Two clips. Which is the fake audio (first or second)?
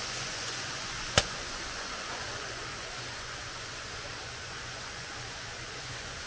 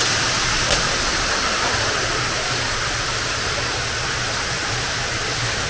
first